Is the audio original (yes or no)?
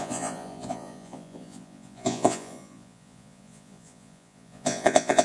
no